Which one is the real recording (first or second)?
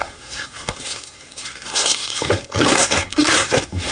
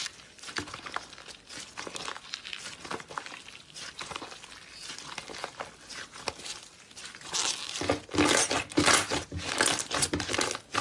second